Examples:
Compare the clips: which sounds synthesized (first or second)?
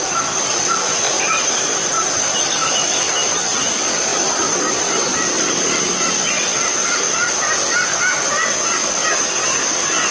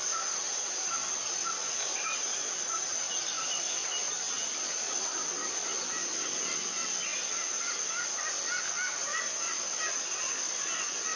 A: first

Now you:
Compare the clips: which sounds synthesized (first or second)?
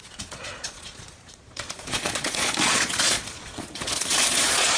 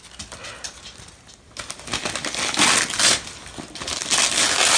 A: first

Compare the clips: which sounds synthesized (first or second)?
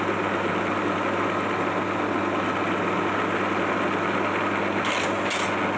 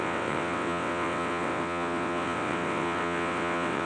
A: second